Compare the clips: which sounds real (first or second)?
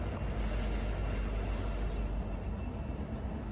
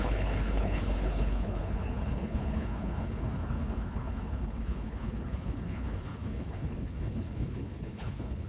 first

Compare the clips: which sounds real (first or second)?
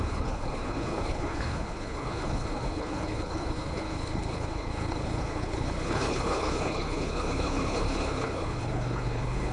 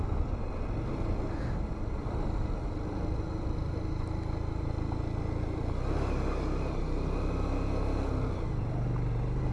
second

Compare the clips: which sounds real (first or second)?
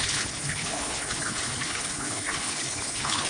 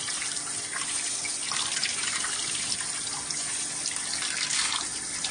second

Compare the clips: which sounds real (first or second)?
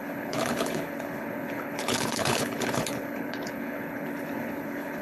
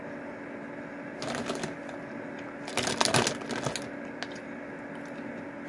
second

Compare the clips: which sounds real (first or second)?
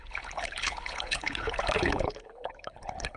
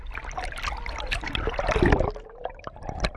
second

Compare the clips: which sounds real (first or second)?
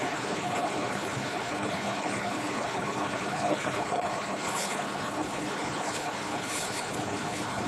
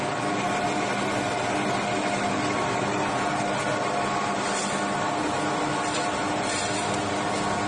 second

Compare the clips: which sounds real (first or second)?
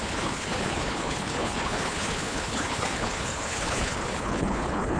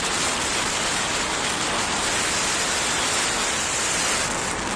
second